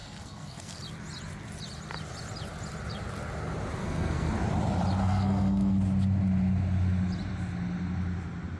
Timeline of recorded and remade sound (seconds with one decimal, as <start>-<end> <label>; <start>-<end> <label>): 0.0-0.8 remade; 0.8-3.8 recorded; 3.8-4.3 remade; 4.3-5.0 recorded; 5.0-5.8 remade; 5.8-8.6 recorded